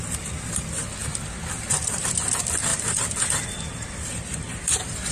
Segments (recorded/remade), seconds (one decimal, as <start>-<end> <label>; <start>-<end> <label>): 0.0-1.0 recorded; 1.0-2.3 remade; 2.3-2.7 recorded; 2.7-5.1 remade